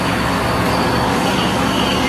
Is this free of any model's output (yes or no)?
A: no